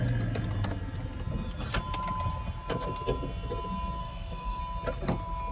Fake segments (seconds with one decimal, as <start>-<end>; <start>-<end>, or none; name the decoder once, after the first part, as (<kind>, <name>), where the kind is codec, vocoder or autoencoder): 4.0-4.6 (codec, SNAC)